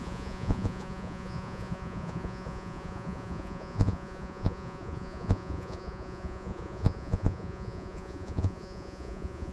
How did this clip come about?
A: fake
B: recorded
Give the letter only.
A